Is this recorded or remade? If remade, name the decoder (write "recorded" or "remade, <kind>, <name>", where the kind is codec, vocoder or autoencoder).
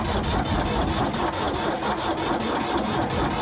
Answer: recorded